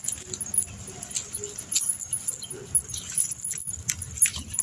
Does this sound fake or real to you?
real